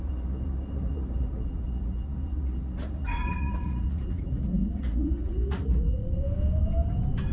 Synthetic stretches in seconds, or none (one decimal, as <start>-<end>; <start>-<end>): 0.0-6.0